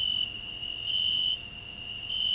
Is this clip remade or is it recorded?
recorded